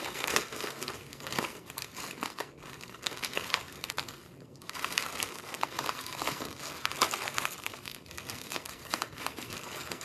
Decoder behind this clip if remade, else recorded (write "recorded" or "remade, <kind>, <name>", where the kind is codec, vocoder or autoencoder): remade, codec, SNAC